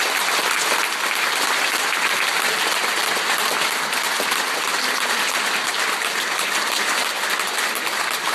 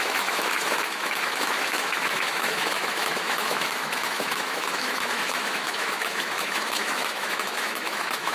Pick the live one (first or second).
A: first